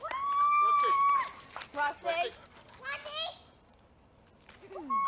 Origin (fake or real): real